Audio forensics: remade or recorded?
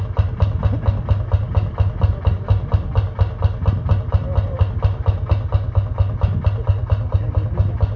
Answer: recorded